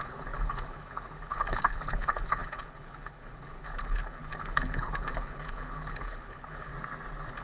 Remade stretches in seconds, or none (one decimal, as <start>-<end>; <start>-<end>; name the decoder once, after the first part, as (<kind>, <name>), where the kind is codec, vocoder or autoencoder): 0.0-6.7 (codec, HILCodec)